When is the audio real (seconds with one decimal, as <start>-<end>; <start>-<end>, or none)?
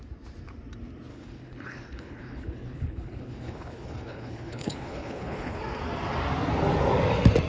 0.0-1.1; 5.6-7.5